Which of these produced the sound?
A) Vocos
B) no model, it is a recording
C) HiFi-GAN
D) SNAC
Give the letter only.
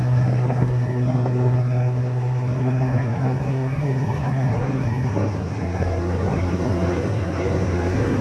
D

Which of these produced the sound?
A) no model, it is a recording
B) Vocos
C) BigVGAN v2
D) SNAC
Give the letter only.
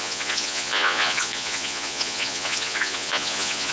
B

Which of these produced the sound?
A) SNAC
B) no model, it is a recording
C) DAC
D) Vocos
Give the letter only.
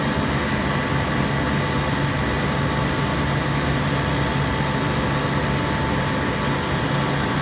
B